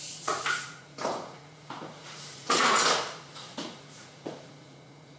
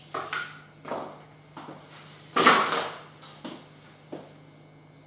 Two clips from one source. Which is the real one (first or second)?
second